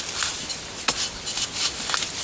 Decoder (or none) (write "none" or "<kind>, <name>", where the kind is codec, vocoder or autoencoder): none